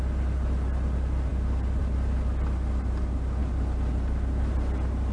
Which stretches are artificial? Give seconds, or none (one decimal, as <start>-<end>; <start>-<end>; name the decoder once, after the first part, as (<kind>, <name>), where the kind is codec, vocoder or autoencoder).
none